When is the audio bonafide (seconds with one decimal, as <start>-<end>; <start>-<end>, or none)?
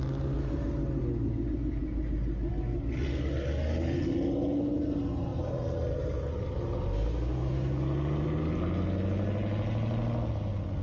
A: 0.0-10.8